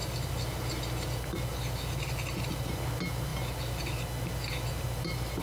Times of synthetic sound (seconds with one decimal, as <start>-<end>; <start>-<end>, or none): none